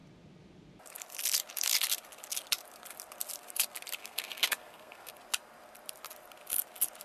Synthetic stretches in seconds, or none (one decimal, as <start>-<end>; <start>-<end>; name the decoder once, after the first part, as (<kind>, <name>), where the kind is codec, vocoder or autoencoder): 4.0-5.1 (codec, SNAC)